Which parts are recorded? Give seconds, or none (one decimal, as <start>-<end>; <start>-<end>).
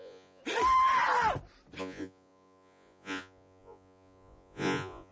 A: 0.4-1.8